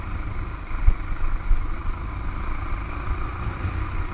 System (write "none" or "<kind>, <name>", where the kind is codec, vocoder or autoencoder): none